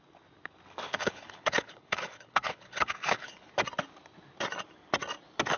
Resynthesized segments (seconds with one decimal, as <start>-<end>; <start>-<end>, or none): 0.9-3.5